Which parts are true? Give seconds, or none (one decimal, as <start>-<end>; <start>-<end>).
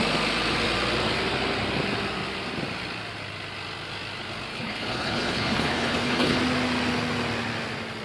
0.0-4.5; 6.4-8.0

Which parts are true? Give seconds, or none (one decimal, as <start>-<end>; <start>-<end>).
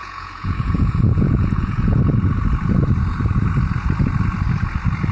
2.0-5.1